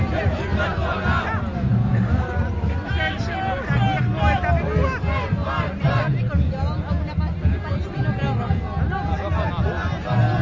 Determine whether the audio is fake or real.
real